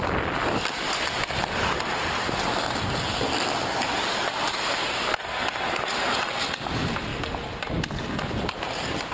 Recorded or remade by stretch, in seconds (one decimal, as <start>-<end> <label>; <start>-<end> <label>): 0.0-9.1 recorded